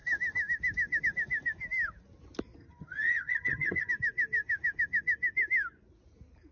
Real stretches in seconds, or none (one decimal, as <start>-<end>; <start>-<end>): 0.0-2.6; 3.9-6.5